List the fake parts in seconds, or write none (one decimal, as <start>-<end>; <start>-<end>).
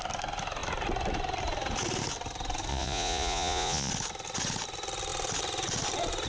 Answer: 2.7-3.9